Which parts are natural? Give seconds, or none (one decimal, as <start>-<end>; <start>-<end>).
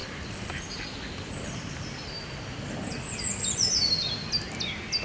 1.5-2.5; 3.2-5.0